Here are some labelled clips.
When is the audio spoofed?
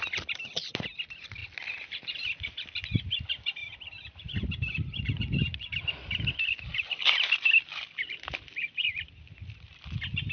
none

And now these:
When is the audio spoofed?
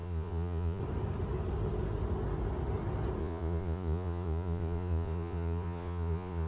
0.0-0.8 (vocoder, Vocos); 3.2-6.5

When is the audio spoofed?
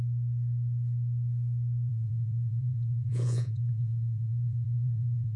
1.9-5.4 (vocoder, Vocos)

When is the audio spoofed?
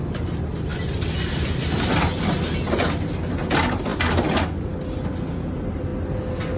none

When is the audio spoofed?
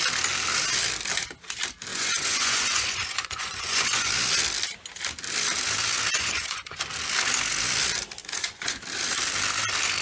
1.9-4.1 (vocoder, Vocos); 6.1-6.8; 8.2-8.8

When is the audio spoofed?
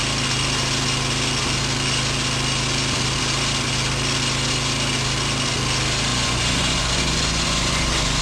6.1-8.2 (vocoder, Vocos)